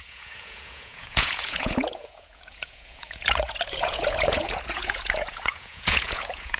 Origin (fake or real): fake